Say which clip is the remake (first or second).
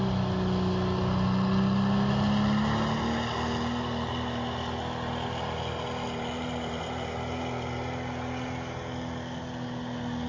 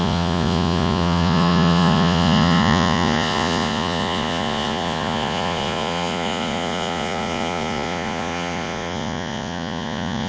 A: second